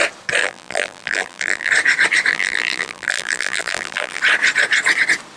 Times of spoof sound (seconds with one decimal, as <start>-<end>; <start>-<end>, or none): 0.4-1.7; 2.3-4.2